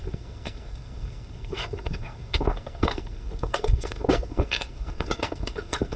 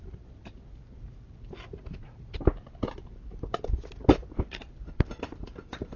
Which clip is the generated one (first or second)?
first